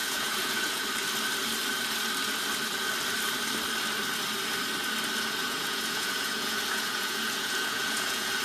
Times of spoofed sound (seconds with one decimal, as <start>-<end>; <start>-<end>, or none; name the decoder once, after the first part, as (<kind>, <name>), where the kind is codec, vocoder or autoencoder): 0.0-0.8 (vocoder, Vocos); 5.4-8.4